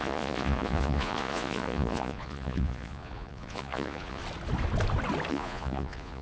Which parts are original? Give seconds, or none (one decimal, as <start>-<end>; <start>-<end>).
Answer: 4.2-5.3